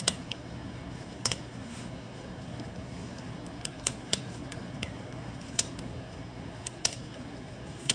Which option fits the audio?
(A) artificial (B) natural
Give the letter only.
A